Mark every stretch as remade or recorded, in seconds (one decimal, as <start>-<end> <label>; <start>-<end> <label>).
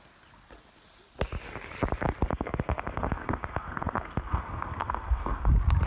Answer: 0.0-2.3 recorded; 2.3-5.5 remade; 5.5-5.9 recorded